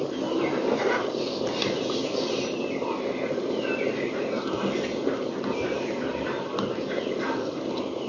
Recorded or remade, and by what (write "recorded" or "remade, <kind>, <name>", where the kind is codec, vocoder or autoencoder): recorded